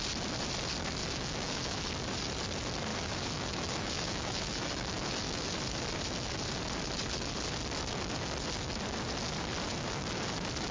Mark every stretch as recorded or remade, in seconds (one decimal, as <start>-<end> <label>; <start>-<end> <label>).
0.0-1.0 recorded; 1.0-1.9 remade; 1.9-2.9 recorded; 2.9-5.5 remade; 5.5-10.7 recorded

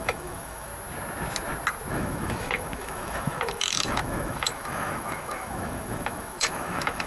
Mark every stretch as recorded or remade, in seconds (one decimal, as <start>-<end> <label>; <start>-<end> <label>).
0.0-0.7 remade; 0.7-1.9 recorded; 1.9-7.1 remade

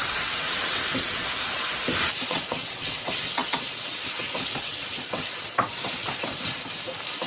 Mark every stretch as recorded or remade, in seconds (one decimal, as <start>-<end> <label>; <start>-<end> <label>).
0.0-1.2 remade; 1.2-2.3 recorded; 2.3-6.3 remade; 6.3-7.3 recorded

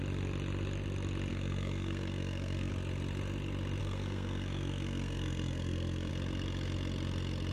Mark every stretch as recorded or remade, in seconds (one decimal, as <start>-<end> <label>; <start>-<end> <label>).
0.0-1.3 recorded; 1.3-2.7 remade; 2.7-3.8 recorded; 3.8-6.1 remade; 6.1-7.5 recorded

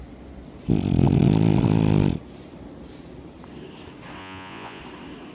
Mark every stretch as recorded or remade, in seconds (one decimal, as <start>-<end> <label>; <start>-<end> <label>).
0.0-4.2 recorded; 4.2-4.8 remade; 4.8-5.3 recorded